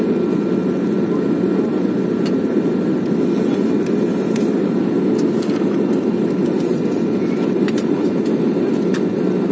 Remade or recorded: recorded